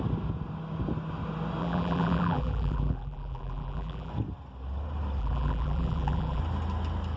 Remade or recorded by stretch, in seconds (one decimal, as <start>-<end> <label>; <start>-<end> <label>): 0.0-1.6 recorded; 1.6-4.1 remade; 4.1-5.2 recorded; 5.2-6.4 remade; 6.4-7.2 recorded